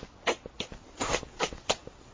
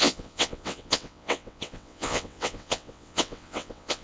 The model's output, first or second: second